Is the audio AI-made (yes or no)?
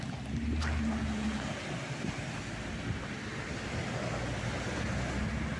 no